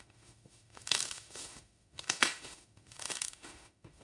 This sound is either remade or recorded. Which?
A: remade